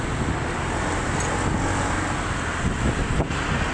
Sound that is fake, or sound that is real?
real